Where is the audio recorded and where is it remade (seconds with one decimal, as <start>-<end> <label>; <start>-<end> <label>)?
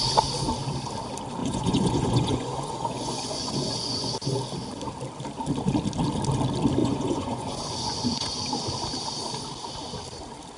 0.0-1.4 recorded; 1.4-4.1 remade; 4.1-6.8 recorded; 6.8-8.4 remade; 8.4-10.6 recorded